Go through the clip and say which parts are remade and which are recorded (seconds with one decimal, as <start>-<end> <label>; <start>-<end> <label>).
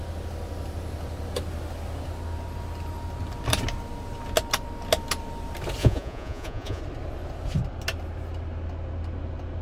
0.0-5.8 recorded; 5.8-6.8 remade; 6.8-9.6 recorded